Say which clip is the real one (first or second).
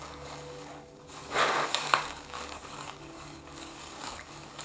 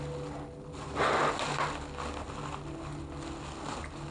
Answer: second